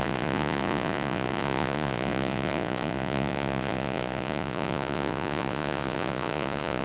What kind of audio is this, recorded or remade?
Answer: remade